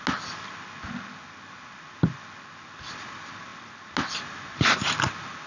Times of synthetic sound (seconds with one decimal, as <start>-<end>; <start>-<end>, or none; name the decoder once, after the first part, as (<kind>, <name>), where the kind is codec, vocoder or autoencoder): none

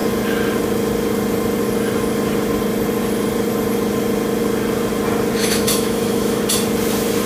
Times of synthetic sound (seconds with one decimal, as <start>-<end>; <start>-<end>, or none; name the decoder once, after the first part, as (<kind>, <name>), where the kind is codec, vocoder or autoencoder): 5.4-6.4 (autoencoder, DAC-VAE)

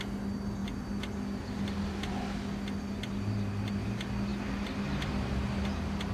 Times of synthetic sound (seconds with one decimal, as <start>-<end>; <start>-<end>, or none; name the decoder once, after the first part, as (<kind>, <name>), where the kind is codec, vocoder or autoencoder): none

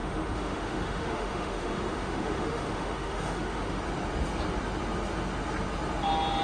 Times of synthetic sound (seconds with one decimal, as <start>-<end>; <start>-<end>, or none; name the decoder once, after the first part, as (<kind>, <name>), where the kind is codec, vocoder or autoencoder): 0.0-3.8 (autoencoder, DAC-VAE)